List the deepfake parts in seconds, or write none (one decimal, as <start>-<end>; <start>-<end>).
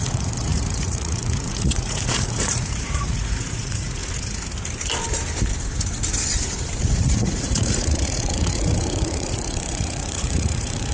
0.0-4.0; 6.8-10.9